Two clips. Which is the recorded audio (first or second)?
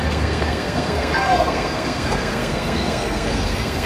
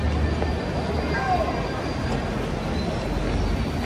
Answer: second